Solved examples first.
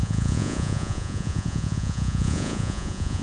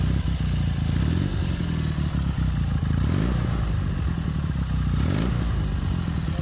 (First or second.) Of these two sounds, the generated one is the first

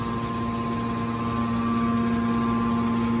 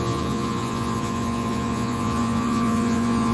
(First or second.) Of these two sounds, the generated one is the second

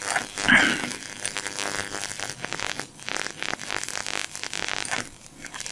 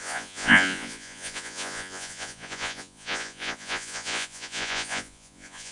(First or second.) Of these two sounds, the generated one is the second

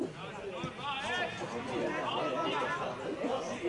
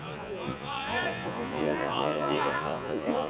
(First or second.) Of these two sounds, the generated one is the second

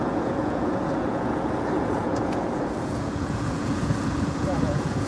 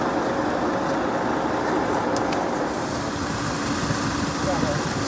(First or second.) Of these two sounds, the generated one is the first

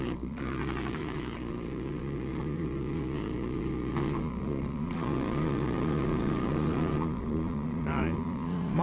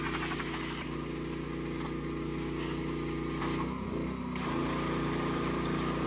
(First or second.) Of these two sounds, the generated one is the first